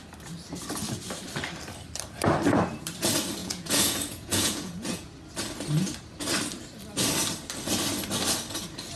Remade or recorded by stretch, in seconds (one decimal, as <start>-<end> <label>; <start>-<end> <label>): 0.0-3.4 recorded; 3.4-5.1 remade; 5.1-9.0 recorded